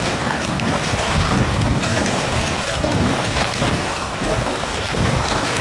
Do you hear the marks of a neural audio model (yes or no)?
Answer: yes